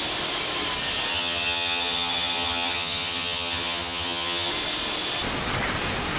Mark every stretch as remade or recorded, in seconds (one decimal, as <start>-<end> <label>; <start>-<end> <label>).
0.0-1.1 recorded; 1.1-4.5 remade; 4.5-6.2 recorded